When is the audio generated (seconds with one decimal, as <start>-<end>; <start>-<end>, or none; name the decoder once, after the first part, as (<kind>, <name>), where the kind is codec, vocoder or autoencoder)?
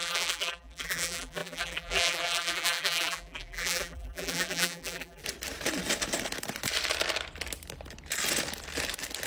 0.0-5.2 (vocoder, BigVGAN v2)